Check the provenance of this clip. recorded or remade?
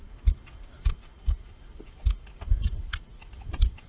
recorded